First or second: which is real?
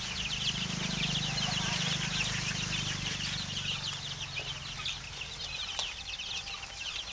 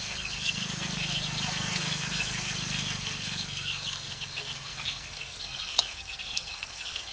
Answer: first